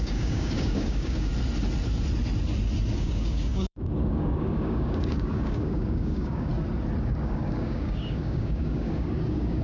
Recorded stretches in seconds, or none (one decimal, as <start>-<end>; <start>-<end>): 1.3-3.0; 6.5-7.0